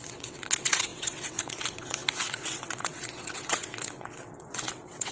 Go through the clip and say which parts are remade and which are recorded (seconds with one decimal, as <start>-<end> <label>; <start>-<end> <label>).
0.0-5.1 remade